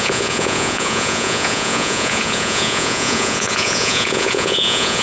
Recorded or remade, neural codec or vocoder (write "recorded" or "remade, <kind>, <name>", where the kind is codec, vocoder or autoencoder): remade, vocoder, Vocos